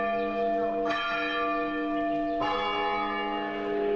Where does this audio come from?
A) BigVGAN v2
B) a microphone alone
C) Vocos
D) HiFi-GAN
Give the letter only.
B